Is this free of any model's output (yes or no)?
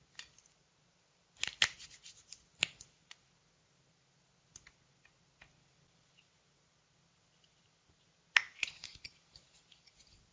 yes